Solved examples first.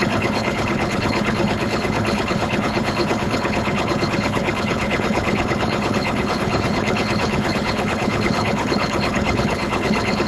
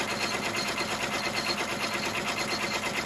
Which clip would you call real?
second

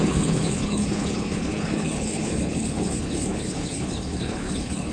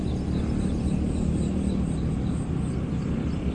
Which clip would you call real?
second